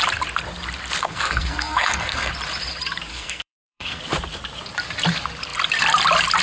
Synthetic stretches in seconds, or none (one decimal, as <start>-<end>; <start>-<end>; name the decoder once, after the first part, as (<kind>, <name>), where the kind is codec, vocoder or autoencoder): 1.0-2.3 (codec, SNAC); 3.1-4.0